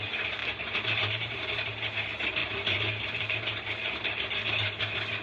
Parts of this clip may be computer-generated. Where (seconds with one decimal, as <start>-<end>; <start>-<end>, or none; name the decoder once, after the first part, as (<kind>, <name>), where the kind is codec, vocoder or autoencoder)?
0.4-1.7 (vocoder, BigVGAN v2); 2.4-4.8